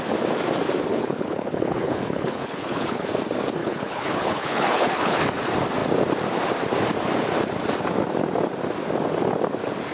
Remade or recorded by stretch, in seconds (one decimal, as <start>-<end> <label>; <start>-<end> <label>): 0.0-0.9 recorded; 0.9-3.1 remade; 3.1-3.6 recorded; 3.6-5.2 remade; 5.2-9.9 recorded